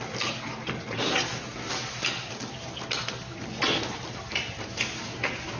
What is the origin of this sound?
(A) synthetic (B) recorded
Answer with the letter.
B